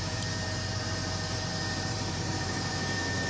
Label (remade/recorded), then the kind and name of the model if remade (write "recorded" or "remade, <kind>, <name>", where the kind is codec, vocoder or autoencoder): remade, vocoder, BigVGAN v2